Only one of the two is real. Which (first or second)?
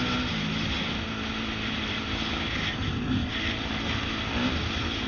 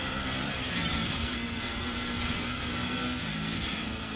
first